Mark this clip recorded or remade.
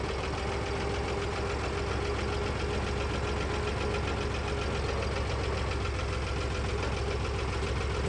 recorded